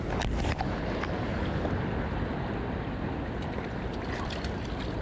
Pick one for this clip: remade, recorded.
recorded